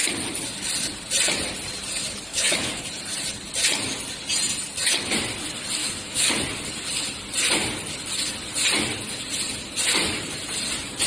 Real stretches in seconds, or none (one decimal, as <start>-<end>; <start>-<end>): 0.0-2.3; 2.8-5.8; 6.3-11.1